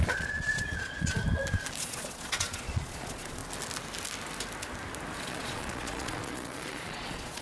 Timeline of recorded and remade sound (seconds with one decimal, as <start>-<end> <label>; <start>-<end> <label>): 0.0-1.2 remade; 1.2-1.8 recorded; 1.8-3.4 remade; 3.4-5.2 recorded; 5.2-7.4 remade